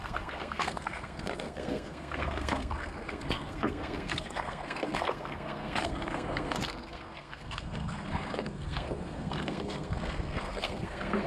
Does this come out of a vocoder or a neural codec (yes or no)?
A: yes